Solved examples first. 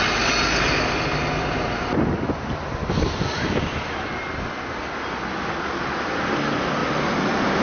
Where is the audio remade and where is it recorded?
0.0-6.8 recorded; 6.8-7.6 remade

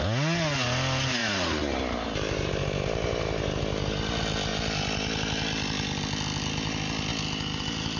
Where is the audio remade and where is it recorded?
0.0-1.2 recorded; 1.2-3.6 remade; 3.6-8.0 recorded

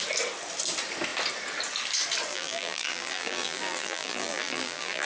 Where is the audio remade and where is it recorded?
0.0-2.3 recorded; 2.3-5.1 remade

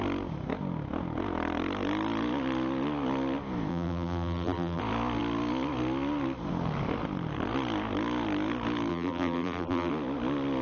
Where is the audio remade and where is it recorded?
0.0-3.7 recorded; 3.7-4.8 remade; 4.8-8.9 recorded; 8.9-9.9 remade; 9.9-10.6 recorded

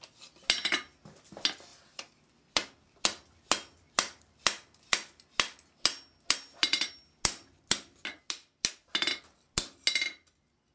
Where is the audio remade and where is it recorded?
0.0-1.7 recorded; 1.7-2.2 remade; 2.2-10.7 recorded

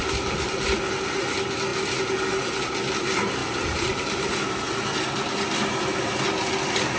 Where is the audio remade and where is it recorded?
0.0-3.4 recorded; 3.4-4.4 remade; 4.4-7.0 recorded

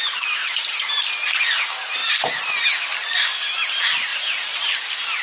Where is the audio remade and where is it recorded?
0.0-0.4 recorded; 0.4-1.5 remade; 1.5-4.1 recorded; 4.1-4.7 remade; 4.7-5.2 recorded

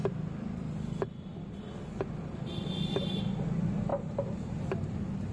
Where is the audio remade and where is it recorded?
0.0-3.9 recorded; 3.9-4.5 remade; 4.5-5.3 recorded